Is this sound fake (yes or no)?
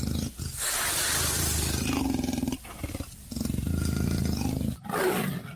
no